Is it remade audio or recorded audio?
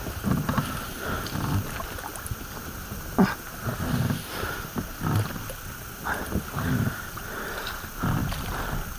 recorded